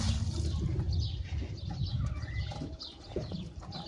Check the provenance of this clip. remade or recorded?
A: recorded